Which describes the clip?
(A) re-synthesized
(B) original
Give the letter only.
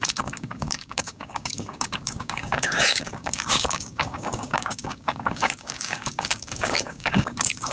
A